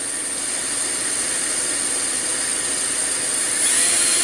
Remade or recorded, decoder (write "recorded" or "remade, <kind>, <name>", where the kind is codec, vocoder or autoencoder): recorded